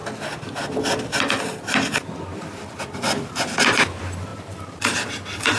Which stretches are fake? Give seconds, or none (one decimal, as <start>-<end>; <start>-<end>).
4.3-5.6